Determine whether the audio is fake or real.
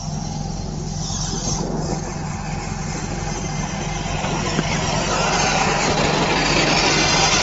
real